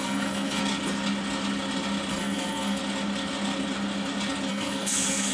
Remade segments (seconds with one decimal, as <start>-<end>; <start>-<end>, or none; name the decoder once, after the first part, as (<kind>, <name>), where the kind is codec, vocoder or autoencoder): 0.0-0.6 (codec, SNAC); 2.1-2.8; 4.5-5.3